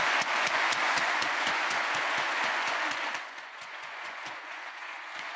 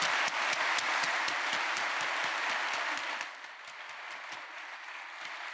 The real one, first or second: second